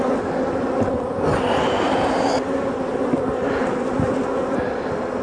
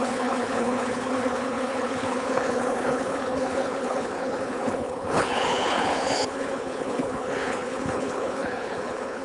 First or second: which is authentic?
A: first